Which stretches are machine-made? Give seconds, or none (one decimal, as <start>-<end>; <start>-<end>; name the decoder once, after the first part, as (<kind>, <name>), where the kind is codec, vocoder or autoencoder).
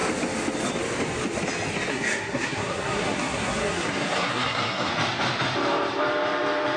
1.9-4.9 (codec, SNAC)